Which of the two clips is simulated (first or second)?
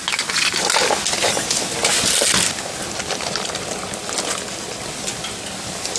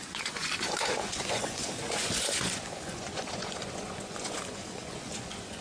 second